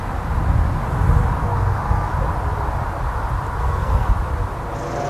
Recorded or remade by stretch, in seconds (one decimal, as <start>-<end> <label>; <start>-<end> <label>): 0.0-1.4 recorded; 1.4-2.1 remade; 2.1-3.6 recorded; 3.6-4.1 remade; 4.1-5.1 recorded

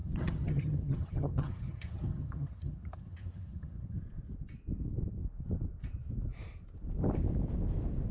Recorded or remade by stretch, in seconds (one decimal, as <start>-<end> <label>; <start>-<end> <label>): 0.0-4.0 remade; 4.0-8.1 recorded

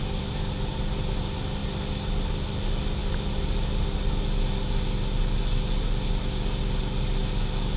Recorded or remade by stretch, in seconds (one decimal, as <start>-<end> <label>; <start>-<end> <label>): 0.0-7.8 recorded

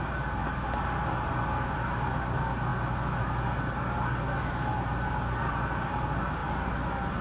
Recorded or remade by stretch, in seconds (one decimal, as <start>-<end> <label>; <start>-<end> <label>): 0.0-7.2 recorded

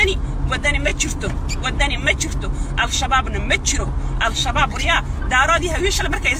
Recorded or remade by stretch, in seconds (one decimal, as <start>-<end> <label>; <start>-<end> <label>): 0.0-6.4 recorded